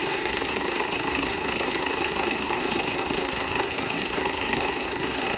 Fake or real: fake